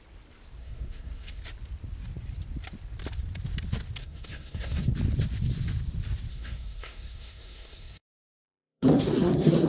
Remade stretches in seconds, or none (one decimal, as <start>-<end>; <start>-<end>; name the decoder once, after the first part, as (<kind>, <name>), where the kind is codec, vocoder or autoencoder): 0.6-1.4 (codec, SNAC); 4.0-4.9; 6.3-9.7